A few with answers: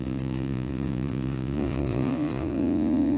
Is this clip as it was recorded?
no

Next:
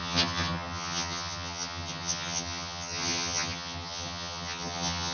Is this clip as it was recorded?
no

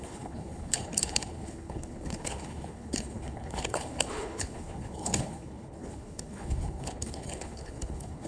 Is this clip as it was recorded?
no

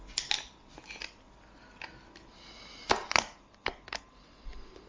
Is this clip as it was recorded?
yes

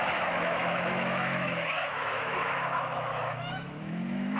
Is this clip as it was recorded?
no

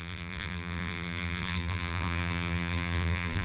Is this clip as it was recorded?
no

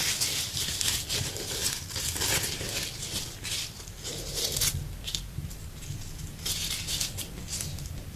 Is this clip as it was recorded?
yes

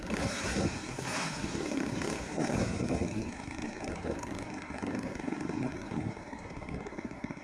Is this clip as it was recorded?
no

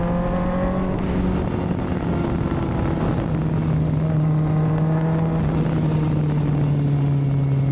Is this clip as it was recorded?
yes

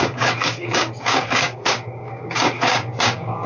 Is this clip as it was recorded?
no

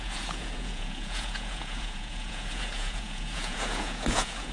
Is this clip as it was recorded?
no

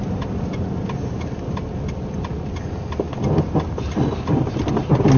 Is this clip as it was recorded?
yes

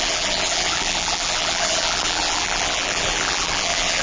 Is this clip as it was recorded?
no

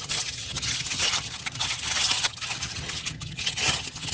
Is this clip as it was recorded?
no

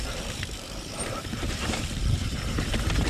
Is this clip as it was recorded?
no